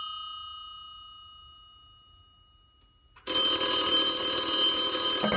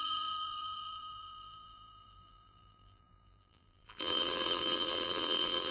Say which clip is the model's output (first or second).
second